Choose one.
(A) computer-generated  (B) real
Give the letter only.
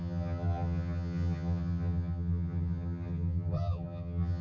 A